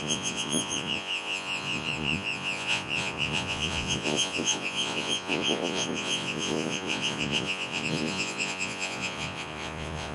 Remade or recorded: remade